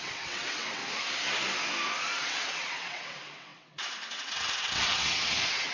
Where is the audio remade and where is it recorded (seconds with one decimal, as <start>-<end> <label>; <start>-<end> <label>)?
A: 0.0-0.8 remade; 0.8-2.2 recorded; 2.2-5.7 remade